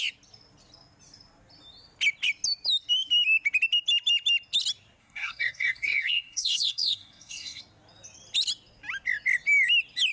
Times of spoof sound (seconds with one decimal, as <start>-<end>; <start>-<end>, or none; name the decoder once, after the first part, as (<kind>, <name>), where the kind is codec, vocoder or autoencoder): 5.0-7.6 (codec, SNAC)